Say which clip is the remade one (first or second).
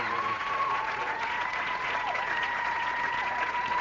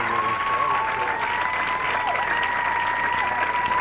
first